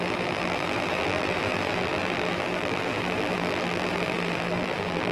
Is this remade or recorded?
remade